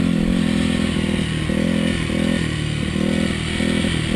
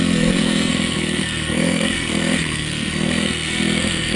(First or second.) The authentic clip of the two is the first